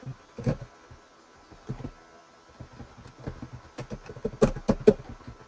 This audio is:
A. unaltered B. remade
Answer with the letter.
A